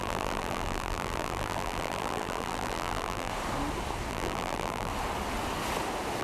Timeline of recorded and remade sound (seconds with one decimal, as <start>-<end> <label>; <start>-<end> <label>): 0.0-3.3 remade; 3.3-4.1 recorded; 4.1-4.9 remade; 4.9-6.2 recorded